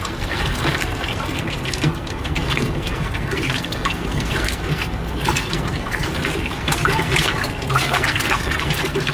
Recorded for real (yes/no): no